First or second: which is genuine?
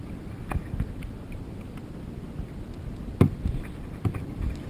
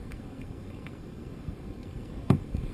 first